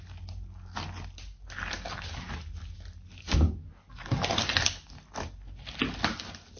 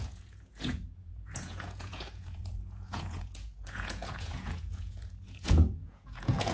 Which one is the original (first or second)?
first